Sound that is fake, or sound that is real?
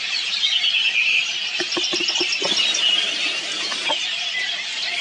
real